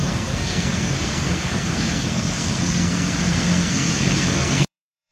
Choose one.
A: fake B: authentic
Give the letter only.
A